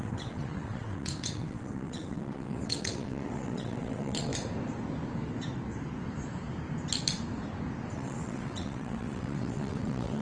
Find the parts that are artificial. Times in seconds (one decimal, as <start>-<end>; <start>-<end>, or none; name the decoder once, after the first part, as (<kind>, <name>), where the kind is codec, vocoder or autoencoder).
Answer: 0.0-4.3 (vocoder, WaveNeXt); 7.9-10.2